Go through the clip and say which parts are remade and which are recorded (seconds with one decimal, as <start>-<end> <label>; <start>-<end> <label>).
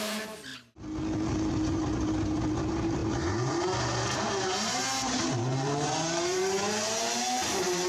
0.0-0.5 remade; 0.5-1.5 recorded; 1.5-7.9 remade